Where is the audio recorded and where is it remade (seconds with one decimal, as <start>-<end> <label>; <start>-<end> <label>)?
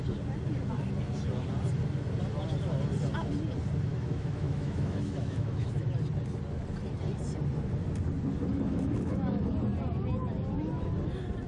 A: 0.0-3.9 recorded; 3.9-5.9 remade; 5.9-8.5 recorded; 8.5-9.5 remade; 9.5-11.5 recorded